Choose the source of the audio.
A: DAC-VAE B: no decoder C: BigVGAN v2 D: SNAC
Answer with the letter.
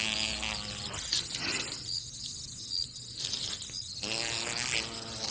B